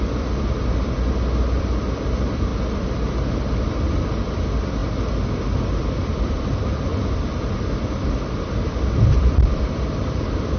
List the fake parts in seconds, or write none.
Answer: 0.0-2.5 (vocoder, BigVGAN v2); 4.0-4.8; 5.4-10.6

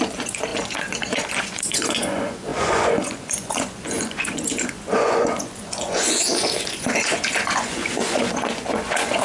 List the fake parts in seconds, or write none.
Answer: 0.0-9.2 (vocoder, Vocos)

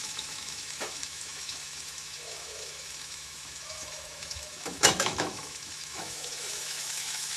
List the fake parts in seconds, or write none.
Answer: 0.0-7.4 (autoencoder, DAC-VAE)

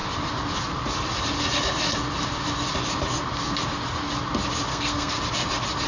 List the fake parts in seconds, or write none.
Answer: 4.7-5.2 (codec, SNAC)

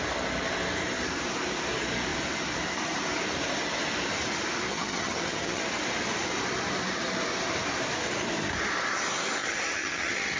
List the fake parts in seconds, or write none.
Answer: 4.7-5.6 (vocoder, HiFi-GAN); 9.4-10.4

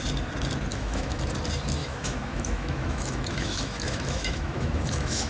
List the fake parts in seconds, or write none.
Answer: 0.7-1.2 (autoencoder, DAC-VAE); 1.8-5.3